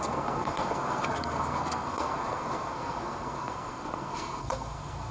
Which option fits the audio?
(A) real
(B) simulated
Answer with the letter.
B